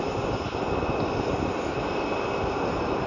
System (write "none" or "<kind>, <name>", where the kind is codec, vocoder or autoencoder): none